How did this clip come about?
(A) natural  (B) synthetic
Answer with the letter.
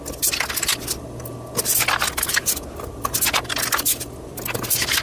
A